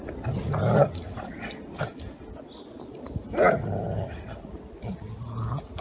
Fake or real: real